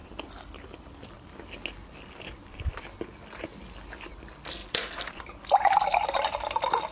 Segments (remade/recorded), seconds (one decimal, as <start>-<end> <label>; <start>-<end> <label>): 0.0-6.9 recorded